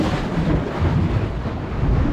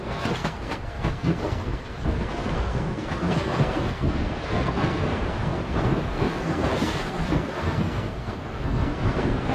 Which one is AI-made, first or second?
second